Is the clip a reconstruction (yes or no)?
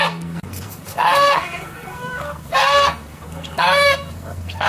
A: yes